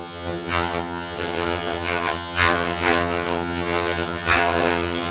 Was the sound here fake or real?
fake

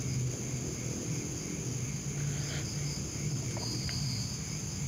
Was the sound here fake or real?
real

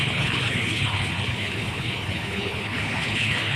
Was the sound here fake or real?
fake